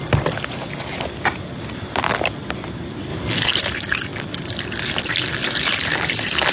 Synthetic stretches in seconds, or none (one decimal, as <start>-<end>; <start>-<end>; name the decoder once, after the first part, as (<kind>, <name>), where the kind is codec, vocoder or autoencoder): none